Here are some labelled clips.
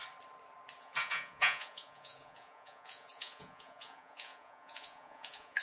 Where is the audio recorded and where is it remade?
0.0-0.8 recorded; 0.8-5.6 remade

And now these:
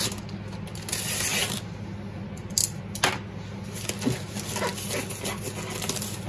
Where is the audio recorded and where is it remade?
0.0-1.4 recorded; 1.4-2.8 remade; 2.8-6.3 recorded

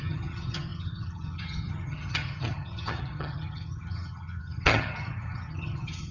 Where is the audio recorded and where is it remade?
0.0-6.1 remade

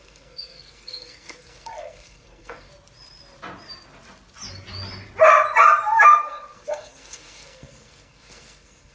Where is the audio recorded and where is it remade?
0.0-2.7 remade; 2.7-6.2 recorded; 6.2-8.9 remade

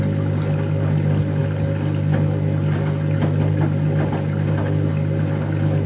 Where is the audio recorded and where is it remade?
0.0-5.9 recorded

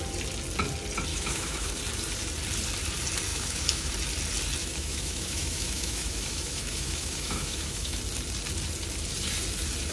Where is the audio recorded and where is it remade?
0.0-1.1 recorded; 1.1-1.7 remade; 1.7-3.3 recorded; 3.3-3.9 remade; 3.9-4.6 recorded; 4.6-8.0 remade; 8.0-9.9 recorded

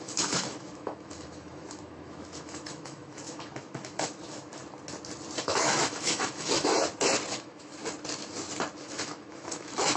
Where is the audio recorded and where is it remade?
0.0-4.6 remade; 4.6-5.4 recorded; 5.4-6.7 remade; 6.7-7.3 recorded; 7.3-7.8 remade; 7.8-8.8 recorded; 8.8-10.0 remade